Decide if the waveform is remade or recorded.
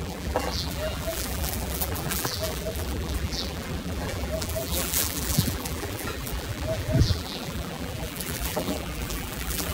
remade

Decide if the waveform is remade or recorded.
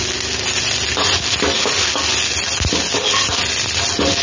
recorded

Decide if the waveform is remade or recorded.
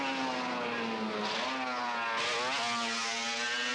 recorded